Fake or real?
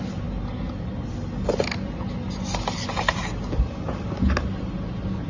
real